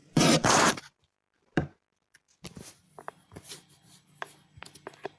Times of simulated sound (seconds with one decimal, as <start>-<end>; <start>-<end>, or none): 0.0-2.9